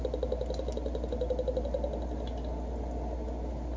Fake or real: real